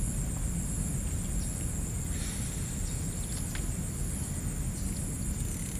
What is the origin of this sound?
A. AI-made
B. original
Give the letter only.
B